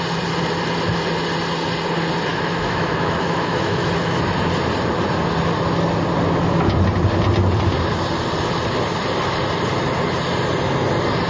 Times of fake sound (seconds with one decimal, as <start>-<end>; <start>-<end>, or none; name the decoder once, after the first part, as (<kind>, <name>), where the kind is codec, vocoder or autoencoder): 2.3-4.2 (autoencoder, DAC-VAE)